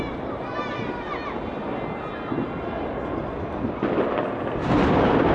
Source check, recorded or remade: recorded